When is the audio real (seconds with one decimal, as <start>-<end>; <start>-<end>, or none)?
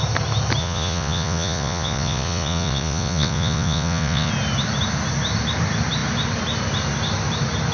0.0-0.6; 4.3-7.7